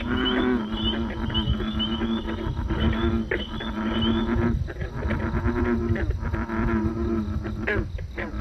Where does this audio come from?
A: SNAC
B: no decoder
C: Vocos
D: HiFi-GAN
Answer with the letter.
B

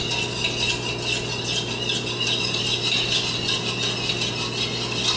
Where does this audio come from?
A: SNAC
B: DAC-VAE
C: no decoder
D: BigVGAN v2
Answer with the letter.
C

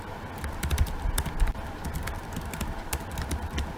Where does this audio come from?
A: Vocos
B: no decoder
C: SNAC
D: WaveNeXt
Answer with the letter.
B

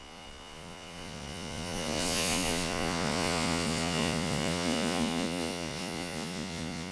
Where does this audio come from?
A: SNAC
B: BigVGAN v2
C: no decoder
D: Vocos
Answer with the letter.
D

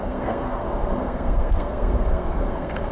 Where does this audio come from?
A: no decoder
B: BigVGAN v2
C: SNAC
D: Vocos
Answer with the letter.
C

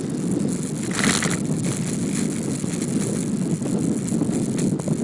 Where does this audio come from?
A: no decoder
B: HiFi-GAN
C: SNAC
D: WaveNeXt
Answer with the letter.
A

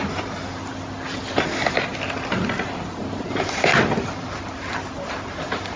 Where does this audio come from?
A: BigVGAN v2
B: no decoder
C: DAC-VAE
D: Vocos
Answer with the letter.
B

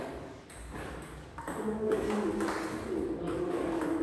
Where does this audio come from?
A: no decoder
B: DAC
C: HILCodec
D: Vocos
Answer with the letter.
B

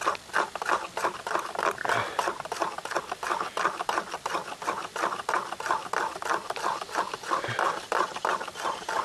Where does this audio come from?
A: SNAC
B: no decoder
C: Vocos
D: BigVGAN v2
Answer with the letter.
B